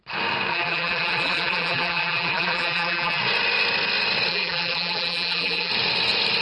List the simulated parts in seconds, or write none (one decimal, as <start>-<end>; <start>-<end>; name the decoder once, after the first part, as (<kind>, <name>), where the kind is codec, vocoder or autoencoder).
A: 0.5-3.2 (vocoder, BigVGAN v2); 4.3-5.7